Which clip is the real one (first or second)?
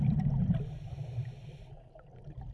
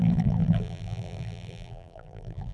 first